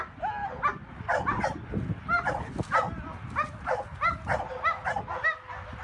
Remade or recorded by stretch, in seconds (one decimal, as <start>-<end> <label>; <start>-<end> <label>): 0.0-5.8 recorded